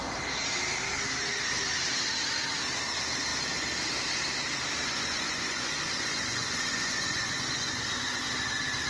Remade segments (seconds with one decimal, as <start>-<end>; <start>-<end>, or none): 4.8-8.2